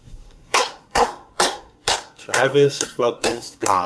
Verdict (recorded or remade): remade